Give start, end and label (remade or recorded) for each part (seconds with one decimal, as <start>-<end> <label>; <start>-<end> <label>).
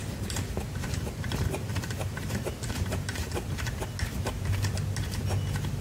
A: 0.0-3.5 remade; 3.5-5.8 recorded